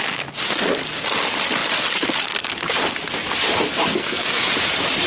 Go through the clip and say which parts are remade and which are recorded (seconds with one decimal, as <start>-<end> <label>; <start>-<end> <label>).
0.0-3.9 recorded; 3.9-4.5 remade; 4.5-5.1 recorded